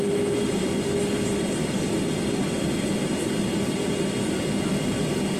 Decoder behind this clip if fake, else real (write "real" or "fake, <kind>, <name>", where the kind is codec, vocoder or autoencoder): real